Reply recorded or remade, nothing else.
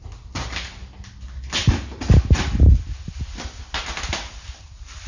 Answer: recorded